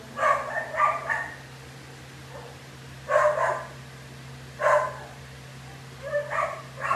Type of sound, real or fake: real